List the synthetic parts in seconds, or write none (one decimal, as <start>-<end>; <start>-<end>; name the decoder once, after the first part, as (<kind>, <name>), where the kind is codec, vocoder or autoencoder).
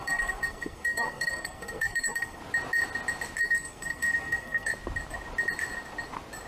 0.0-2.4 (codec, SNAC); 3.4-4.7